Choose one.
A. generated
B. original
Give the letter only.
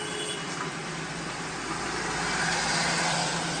B